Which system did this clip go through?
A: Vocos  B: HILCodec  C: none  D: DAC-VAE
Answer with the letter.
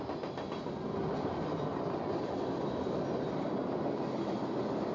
C